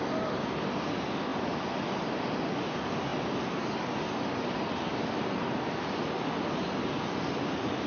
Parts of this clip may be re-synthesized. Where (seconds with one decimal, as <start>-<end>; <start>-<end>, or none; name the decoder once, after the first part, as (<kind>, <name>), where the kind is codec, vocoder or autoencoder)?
none